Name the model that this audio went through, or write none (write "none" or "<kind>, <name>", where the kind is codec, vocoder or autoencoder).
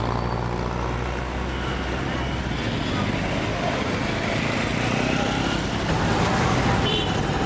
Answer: none